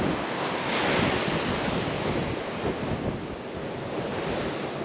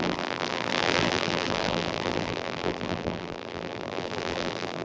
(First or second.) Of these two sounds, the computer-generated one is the second